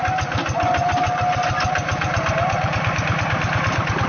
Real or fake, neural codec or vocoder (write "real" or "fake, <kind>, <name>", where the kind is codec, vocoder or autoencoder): real